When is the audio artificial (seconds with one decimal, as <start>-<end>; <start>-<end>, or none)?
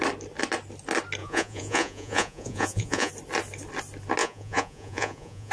1.2-3.1; 4.2-5.5